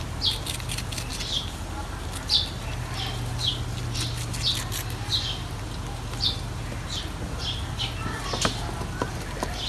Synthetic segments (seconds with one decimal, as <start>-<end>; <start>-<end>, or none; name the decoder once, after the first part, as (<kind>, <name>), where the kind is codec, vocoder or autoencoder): none